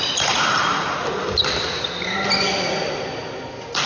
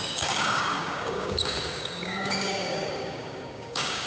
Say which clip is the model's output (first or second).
second